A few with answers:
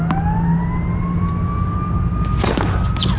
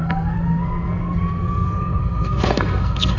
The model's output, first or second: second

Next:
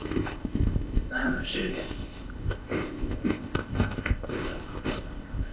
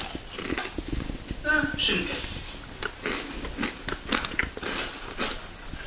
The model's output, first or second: first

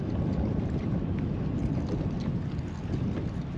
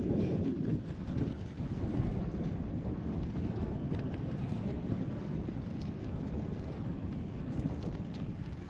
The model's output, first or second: second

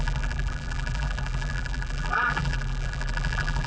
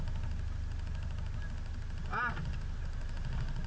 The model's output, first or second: first